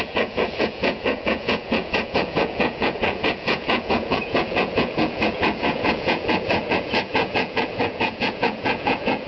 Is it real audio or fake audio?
fake